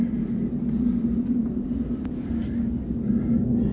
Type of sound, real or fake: real